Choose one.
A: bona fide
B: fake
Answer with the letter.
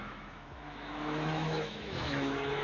B